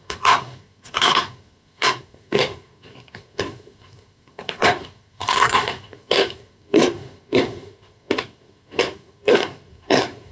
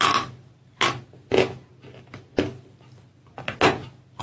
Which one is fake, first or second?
first